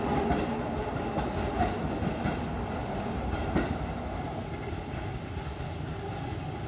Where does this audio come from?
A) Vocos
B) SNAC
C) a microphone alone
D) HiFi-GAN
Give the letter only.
C